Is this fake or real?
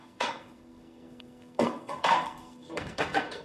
fake